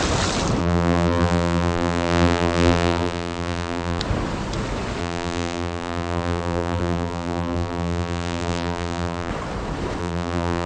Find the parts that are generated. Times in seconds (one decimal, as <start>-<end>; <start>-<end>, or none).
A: 0.6-4.0; 5.0-9.3; 10.0-10.7